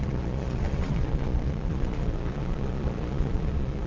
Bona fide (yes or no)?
no